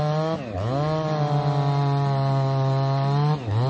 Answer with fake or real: real